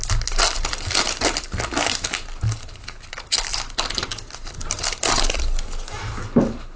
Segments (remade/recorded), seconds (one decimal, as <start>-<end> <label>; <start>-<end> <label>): 0.0-6.8 recorded